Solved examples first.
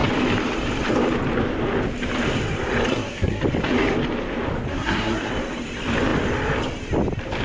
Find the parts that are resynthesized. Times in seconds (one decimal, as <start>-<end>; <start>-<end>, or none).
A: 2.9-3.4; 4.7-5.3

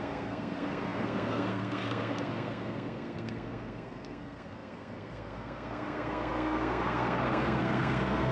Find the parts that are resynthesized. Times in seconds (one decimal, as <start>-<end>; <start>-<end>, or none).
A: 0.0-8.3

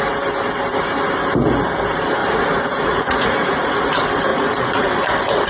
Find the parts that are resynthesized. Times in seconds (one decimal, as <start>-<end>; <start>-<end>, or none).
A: 2.2-3.7; 4.3-4.9

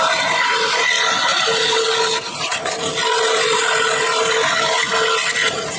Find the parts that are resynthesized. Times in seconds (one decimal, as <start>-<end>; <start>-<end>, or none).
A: none

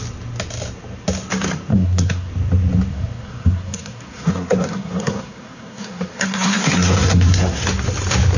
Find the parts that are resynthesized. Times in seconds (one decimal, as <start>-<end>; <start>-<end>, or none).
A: 1.7-2.3; 2.9-7.6

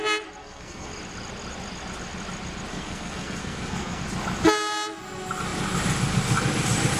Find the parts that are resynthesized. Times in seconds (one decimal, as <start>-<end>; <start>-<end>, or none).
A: 0.4-0.9; 2.7-4.0

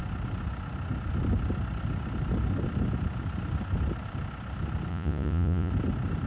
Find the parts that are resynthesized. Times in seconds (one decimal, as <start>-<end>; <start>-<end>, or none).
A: 4.9-5.7

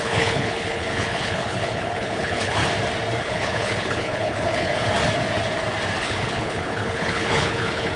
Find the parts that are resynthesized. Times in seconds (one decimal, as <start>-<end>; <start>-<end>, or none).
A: 0.0-2.6; 3.2-4.7; 6.0-8.0